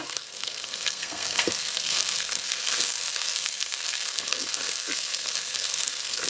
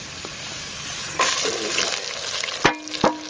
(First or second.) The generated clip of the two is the first